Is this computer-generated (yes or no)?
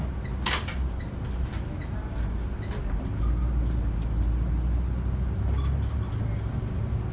no